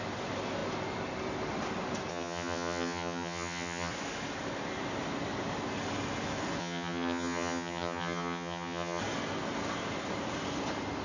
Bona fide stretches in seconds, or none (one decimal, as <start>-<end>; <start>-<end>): 0.0-2.1; 3.9-6.6; 9.0-11.0